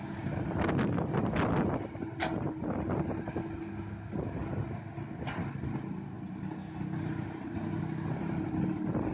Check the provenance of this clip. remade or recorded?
recorded